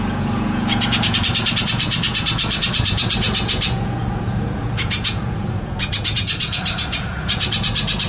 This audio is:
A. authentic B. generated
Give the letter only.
B